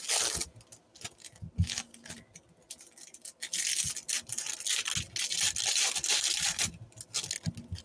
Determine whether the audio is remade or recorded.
recorded